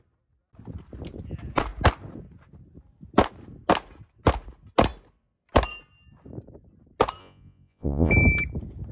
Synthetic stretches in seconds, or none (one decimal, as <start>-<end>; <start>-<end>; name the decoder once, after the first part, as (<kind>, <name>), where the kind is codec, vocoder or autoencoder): 7.2-8.1 (vocoder, Vocos)